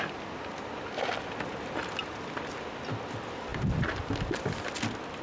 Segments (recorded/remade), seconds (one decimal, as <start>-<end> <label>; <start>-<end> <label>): 0.0-5.2 recorded